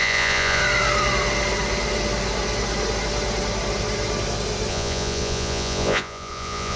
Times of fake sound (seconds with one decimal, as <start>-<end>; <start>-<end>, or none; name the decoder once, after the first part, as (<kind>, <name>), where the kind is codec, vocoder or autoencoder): 0.0-0.6 (vocoder, Vocos); 4.7-6.8